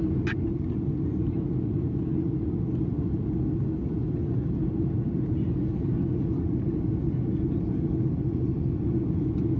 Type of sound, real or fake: real